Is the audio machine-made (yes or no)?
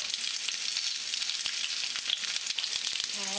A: no